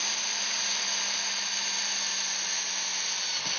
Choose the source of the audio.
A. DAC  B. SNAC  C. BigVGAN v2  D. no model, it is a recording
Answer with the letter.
D